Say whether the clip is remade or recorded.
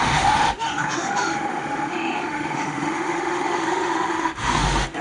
remade